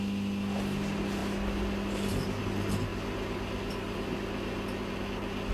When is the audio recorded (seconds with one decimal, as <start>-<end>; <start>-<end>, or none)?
0.0-5.5